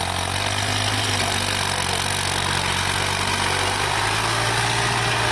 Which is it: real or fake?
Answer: real